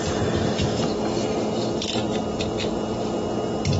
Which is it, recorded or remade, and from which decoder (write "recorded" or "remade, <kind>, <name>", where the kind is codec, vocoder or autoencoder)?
recorded